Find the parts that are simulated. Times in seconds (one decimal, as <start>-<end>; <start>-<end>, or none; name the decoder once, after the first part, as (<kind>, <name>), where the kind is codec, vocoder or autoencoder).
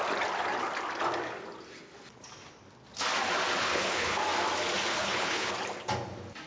3.6-4.2 (codec, HILCodec); 4.9-5.5